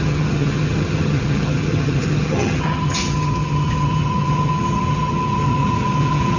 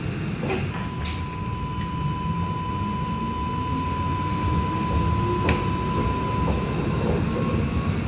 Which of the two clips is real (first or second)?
second